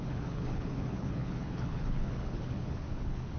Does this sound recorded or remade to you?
remade